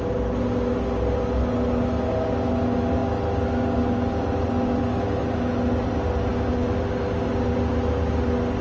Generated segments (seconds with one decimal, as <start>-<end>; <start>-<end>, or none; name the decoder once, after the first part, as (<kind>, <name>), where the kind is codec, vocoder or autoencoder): none